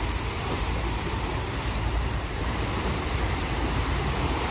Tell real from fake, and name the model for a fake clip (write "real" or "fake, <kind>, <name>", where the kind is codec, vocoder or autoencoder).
fake, vocoder, BigVGAN v2